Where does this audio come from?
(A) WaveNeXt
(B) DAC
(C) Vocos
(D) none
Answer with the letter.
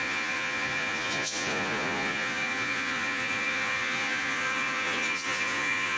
C